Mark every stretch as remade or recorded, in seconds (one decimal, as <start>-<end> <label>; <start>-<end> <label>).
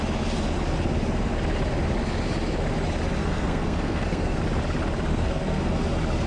0.0-3.2 recorded; 3.2-4.4 remade; 4.4-5.1 recorded; 5.1-5.7 remade; 5.7-6.3 recorded